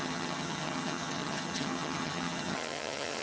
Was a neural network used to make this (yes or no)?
yes